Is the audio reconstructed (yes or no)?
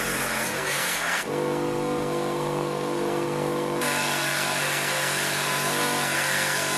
yes